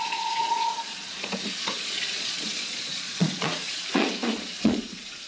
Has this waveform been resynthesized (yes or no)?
yes